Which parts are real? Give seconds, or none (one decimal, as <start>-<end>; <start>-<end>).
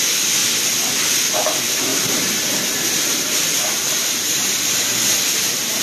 0.0-1.9